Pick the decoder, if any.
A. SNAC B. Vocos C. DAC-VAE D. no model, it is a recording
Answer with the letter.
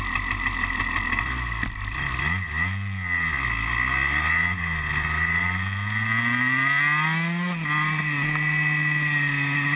D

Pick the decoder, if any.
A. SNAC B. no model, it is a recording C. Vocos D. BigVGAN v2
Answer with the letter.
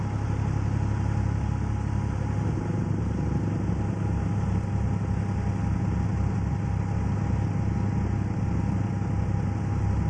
B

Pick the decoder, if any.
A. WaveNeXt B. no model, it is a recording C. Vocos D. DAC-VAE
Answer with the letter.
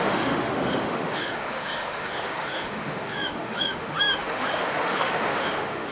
D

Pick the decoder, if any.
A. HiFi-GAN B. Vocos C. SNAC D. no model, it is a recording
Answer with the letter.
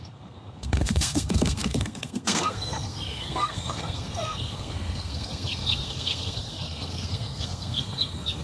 C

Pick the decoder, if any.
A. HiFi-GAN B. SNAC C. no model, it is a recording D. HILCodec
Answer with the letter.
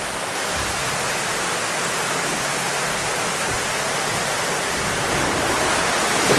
C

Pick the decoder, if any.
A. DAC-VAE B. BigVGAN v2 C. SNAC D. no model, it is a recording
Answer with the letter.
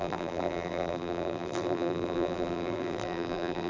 B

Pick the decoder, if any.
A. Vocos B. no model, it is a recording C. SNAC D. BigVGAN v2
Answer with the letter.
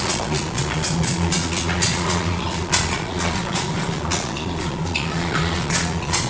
A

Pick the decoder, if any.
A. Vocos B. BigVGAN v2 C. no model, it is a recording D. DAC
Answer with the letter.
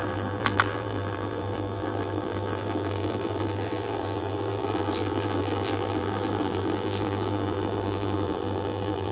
B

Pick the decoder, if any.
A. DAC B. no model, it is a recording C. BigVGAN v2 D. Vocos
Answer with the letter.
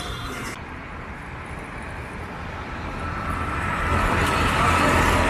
B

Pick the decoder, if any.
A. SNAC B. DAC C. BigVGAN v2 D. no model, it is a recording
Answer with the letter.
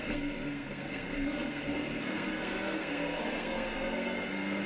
A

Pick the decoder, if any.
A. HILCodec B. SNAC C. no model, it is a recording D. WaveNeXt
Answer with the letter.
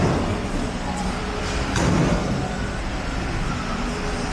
C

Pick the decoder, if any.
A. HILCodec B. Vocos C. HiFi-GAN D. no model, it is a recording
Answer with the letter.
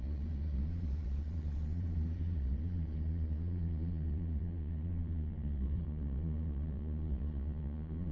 B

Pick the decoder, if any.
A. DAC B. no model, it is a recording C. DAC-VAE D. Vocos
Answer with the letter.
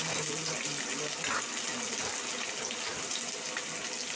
B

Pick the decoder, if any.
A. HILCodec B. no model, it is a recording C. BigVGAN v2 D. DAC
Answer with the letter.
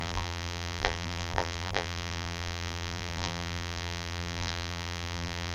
C